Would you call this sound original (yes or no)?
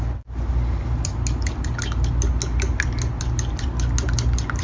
yes